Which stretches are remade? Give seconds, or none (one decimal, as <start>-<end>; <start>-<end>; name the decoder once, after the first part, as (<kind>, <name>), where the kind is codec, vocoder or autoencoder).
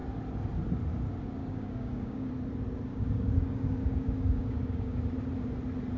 1.4-2.3 (codec, DAC); 2.9-5.0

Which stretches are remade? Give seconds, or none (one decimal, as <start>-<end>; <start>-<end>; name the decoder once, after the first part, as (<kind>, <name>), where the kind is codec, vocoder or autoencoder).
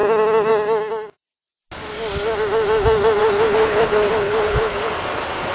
3.2-4.9 (codec, HILCodec)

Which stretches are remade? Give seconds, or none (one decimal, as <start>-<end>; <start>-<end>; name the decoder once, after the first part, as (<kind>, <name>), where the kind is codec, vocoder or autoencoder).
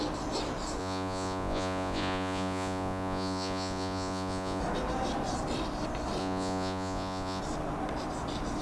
0.8-4.6 (vocoder, Vocos); 6.2-7.4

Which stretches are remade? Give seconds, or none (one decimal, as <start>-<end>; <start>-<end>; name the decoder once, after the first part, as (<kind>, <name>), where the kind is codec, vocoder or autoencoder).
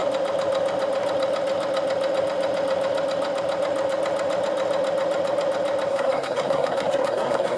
5.9-7.6 (codec, SNAC)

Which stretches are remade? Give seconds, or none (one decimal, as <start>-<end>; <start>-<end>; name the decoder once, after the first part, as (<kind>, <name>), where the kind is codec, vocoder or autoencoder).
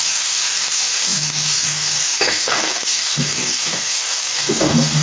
0.0-5.0 (codec, DAC)